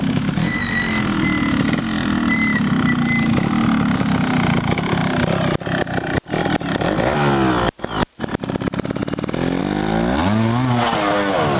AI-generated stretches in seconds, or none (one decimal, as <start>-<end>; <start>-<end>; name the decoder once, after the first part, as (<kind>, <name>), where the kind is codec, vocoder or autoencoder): none